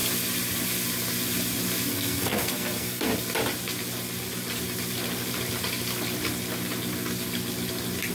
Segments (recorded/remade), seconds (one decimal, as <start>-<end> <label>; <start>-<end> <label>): 0.0-1.9 recorded; 1.9-3.1 remade; 3.1-8.1 recorded